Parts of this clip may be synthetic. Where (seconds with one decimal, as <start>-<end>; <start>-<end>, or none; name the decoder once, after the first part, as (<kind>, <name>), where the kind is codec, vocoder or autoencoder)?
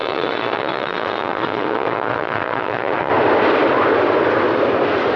0.0-3.1 (vocoder, Vocos)